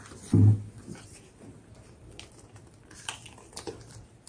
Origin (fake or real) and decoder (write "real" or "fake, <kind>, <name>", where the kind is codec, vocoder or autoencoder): real